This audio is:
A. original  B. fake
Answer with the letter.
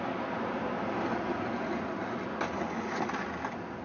A